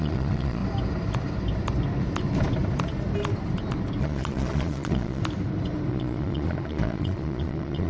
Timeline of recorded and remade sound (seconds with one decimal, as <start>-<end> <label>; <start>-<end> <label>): 0.0-0.6 remade; 0.6-4.0 recorded; 4.0-5.2 remade; 5.2-5.9 recorded; 5.9-7.9 remade